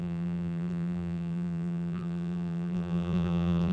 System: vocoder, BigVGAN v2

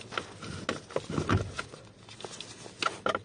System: none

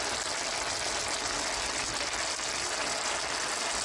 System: none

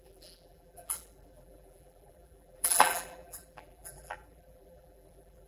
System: vocoder, BigVGAN v2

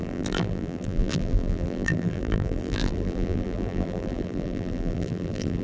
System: vocoder, BigVGAN v2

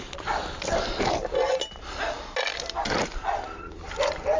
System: none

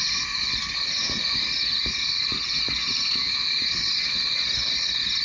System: none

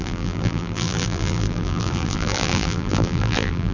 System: vocoder, BigVGAN v2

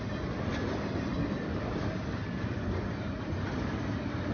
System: none